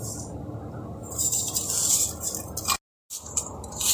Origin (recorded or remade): recorded